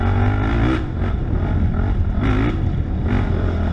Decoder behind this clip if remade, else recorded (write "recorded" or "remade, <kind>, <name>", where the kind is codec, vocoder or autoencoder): recorded